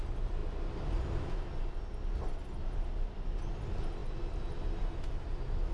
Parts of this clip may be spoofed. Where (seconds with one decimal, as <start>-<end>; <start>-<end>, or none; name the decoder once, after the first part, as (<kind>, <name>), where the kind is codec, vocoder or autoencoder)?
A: none